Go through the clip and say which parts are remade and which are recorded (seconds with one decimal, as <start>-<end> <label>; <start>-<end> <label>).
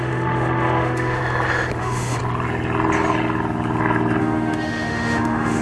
0.0-1.2 remade; 1.2-1.8 recorded; 1.8-2.2 remade; 2.2-4.2 recorded; 4.2-5.6 remade